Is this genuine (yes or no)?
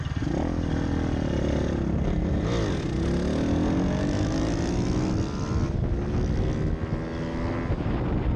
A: yes